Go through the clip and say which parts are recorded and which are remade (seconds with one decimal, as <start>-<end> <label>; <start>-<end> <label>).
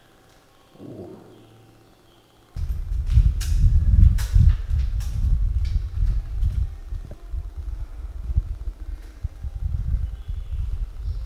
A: 0.0-11.3 recorded